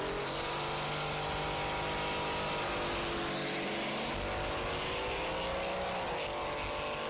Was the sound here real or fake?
real